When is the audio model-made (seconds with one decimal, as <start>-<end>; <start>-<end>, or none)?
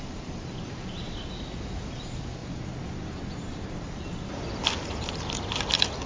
none